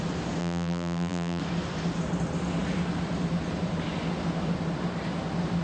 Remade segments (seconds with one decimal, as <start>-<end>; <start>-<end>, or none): 0.4-1.4